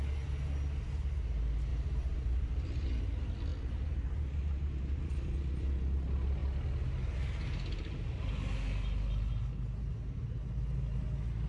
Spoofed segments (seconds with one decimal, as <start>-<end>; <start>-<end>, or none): 1.7-3.0